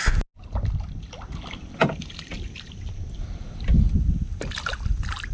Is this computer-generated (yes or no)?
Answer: no